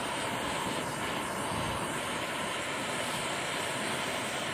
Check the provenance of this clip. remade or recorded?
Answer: recorded